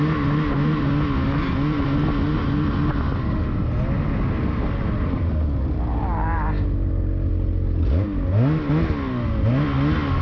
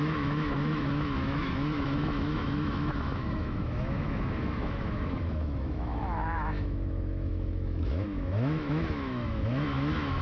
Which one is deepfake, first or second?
second